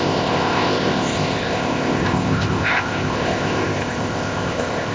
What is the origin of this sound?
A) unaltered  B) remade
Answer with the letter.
B